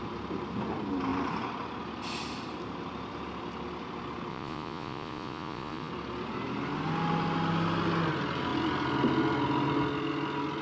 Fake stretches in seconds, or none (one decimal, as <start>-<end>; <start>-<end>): 4.3-5.9

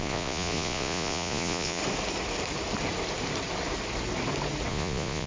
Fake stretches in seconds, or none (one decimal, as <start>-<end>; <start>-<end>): 0.0-1.8; 4.7-5.3